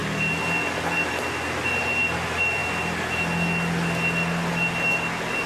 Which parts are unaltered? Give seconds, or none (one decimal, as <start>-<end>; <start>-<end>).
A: 0.0-5.5

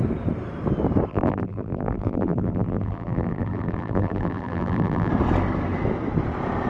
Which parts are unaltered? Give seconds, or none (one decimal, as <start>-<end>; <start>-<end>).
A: 0.0-1.1; 5.1-6.7

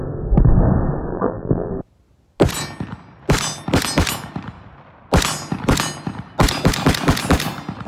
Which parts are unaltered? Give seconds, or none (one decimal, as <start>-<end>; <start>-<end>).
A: 0.0-1.1; 1.7-7.9

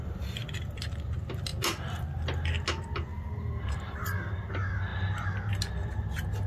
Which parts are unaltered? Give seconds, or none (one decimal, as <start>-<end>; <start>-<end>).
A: 0.0-3.1; 4.3-6.5

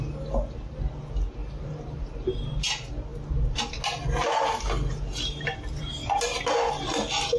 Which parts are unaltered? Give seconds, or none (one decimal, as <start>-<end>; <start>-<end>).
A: 0.0-1.4; 2.3-7.4